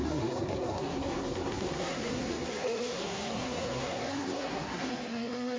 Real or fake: fake